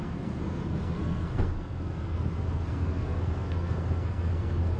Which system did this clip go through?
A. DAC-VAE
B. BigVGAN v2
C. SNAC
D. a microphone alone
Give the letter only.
C